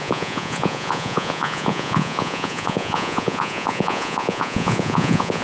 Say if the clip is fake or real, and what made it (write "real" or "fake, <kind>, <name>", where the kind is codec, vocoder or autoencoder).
fake, vocoder, Vocos